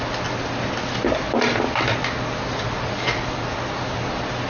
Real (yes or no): yes